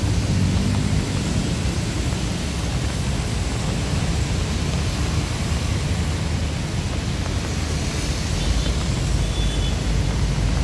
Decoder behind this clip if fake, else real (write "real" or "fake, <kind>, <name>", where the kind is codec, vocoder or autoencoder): real